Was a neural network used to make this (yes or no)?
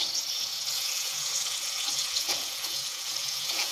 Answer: yes